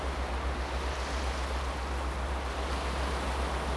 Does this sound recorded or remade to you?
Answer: recorded